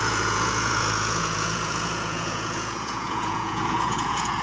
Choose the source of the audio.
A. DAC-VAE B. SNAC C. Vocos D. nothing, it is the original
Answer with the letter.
C